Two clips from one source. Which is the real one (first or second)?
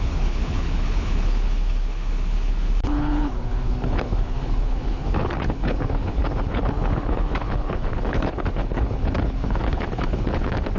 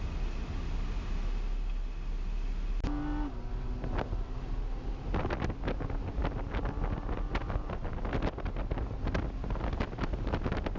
second